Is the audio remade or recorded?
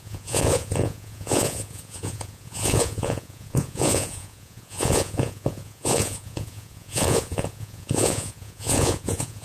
remade